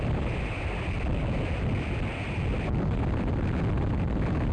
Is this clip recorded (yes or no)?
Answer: yes